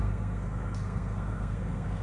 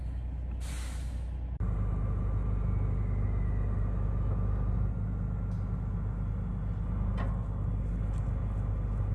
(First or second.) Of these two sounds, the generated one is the first